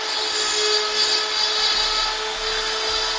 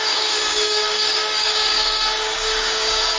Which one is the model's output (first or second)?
second